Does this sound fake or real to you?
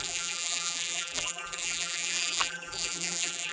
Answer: fake